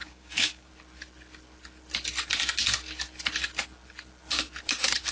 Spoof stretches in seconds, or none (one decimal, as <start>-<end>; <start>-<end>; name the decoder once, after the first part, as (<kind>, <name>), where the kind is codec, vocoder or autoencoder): 0.0-0.7 (codec, DAC)